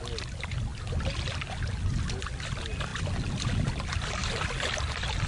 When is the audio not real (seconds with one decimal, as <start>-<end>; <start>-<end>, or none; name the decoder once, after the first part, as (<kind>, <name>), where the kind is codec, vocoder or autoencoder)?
none